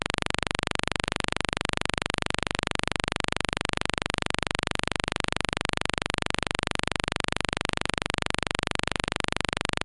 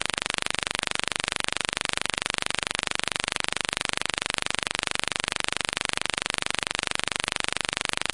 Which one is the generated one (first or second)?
first